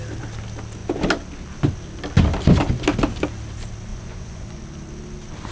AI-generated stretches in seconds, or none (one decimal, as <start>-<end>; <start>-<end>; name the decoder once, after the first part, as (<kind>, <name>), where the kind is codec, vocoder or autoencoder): 3.9-4.6 (vocoder, Vocos)